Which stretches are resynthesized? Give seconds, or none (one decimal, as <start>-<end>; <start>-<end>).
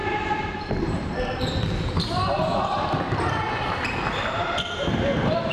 0.0-5.5